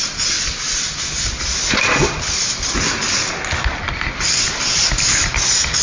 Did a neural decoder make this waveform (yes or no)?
no